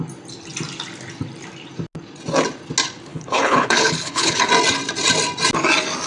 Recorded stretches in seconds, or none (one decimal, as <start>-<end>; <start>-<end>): 0.0-3.1; 4.5-6.1